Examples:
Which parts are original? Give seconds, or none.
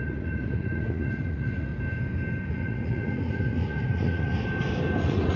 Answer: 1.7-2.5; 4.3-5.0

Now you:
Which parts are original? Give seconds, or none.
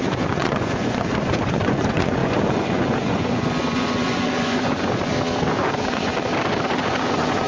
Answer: 5.1-5.6; 6.1-6.8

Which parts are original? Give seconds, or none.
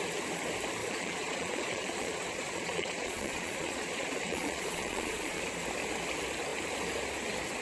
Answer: 0.0-0.8; 5.4-7.6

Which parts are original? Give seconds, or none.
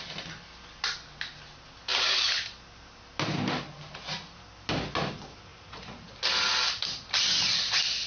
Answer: 0.0-5.5; 6.2-8.1